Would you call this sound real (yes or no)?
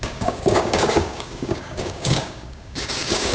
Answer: no